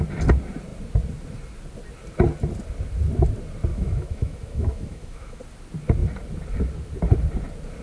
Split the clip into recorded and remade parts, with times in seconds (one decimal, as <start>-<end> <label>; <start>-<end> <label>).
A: 0.0-3.7 recorded; 3.7-5.4 remade; 5.4-7.8 recorded